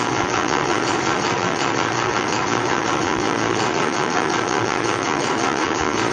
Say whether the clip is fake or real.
fake